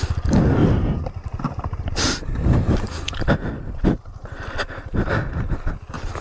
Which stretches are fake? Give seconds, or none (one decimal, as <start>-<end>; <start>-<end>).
0.6-3.5